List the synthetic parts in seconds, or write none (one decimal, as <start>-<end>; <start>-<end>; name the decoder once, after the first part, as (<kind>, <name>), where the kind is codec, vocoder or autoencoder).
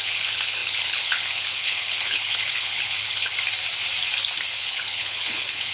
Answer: 0.0-3.3 (codec, HILCodec); 4.6-5.7